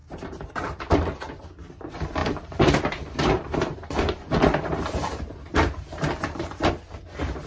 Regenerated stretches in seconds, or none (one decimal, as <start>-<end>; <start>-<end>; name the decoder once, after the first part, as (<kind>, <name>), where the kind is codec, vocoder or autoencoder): 0.0-0.8 (vocoder, BigVGAN v2); 2.2-6.7